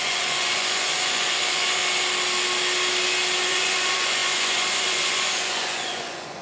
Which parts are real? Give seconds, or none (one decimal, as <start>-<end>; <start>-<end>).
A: 1.8-3.5